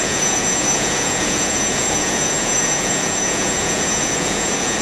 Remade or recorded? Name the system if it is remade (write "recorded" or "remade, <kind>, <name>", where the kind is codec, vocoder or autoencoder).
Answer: remade, vocoder, Vocos